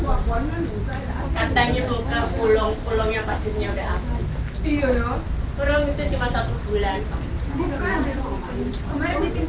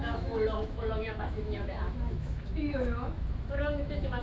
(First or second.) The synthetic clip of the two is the second